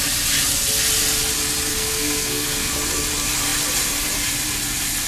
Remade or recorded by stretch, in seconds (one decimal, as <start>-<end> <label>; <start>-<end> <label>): 0.0-1.7 recorded; 1.7-2.7 remade; 2.7-5.1 recorded